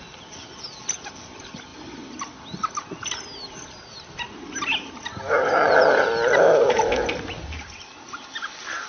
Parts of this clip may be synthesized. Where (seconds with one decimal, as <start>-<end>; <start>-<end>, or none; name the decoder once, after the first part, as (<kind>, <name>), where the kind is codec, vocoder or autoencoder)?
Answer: none